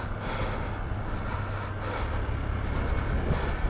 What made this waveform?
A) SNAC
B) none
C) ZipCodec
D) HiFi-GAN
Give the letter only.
B